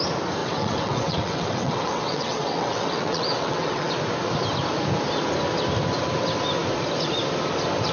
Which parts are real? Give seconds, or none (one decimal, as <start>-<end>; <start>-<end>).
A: 0.0-0.4; 3.9-7.9

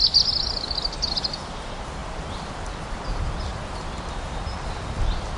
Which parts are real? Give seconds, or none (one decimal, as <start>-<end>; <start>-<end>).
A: 0.0-5.4

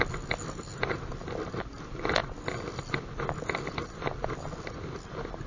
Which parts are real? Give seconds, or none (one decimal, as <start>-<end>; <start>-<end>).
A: 0.0-5.5

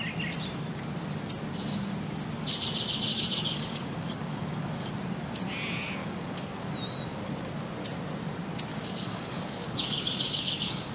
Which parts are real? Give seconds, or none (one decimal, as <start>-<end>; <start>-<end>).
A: 0.0-3.1; 4.9-6.0; 6.5-8.7

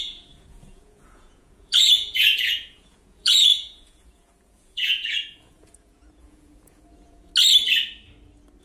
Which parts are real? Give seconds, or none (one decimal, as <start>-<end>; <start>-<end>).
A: 7.3-8.6